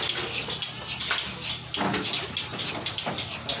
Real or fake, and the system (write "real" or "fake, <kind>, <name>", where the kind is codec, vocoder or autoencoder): real